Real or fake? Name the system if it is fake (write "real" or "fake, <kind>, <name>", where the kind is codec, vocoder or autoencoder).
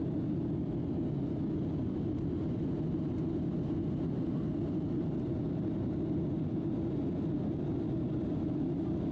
real